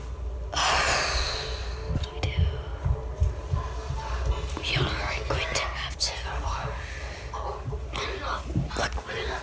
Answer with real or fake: real